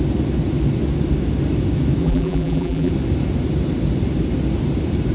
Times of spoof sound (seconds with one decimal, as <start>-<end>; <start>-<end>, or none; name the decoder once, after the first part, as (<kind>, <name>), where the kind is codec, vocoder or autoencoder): 2.0-2.9 (vocoder, BigVGAN v2)